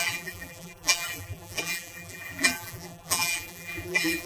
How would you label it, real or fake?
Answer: fake